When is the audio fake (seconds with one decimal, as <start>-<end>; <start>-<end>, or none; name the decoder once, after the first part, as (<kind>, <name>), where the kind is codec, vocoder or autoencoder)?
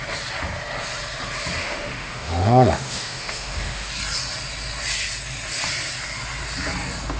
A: 1.6-3.9 (autoencoder, DAC-VAE)